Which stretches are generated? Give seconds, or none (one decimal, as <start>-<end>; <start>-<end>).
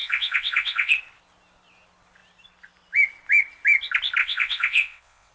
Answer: 0.0-0.9; 4.2-5.3